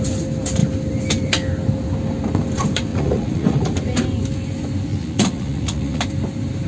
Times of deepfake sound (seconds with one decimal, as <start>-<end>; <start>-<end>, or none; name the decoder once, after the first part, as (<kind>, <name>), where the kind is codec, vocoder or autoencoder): 2.9-3.7 (vocoder, Vocos); 4.9-6.0